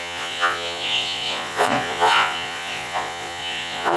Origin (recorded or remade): remade